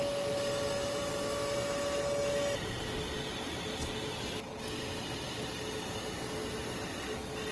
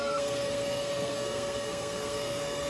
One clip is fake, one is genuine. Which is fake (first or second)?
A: second